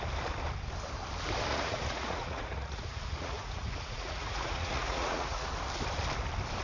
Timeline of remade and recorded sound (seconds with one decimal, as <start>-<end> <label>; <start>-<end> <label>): 0.0-1.5 recorded; 1.5-5.5 remade; 5.5-6.6 recorded